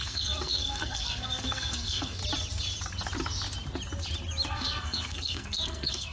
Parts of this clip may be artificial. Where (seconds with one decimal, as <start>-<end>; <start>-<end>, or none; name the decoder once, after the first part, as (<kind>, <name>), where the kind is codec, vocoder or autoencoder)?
0.0-2.2 (codec, SNAC); 4.5-6.1